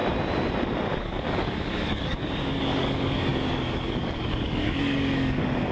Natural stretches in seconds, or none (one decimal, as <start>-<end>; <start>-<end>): 0.0-1.0